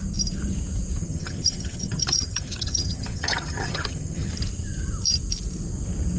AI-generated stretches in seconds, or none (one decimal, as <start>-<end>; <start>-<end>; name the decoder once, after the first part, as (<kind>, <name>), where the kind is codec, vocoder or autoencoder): 1.0-4.3 (vocoder, HiFi-GAN)